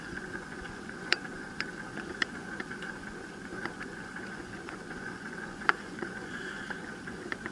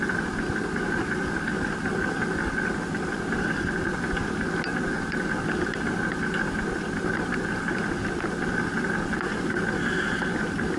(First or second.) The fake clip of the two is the first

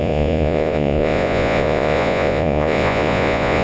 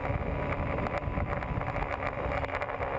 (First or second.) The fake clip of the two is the first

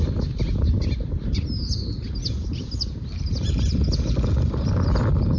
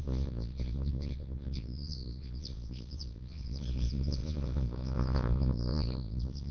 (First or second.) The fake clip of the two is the second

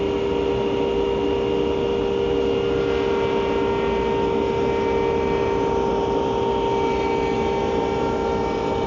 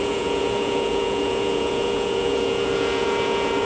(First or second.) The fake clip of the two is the second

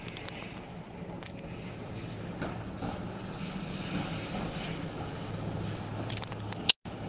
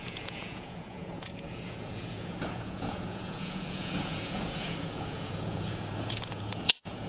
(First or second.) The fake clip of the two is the second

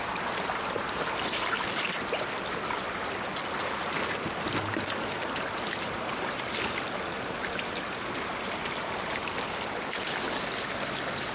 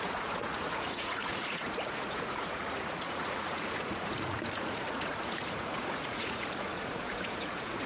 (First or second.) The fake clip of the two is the second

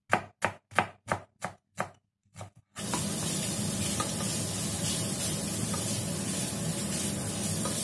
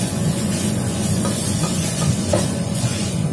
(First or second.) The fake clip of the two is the second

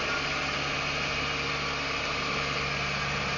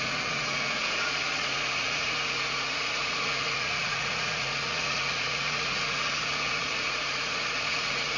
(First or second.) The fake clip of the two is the second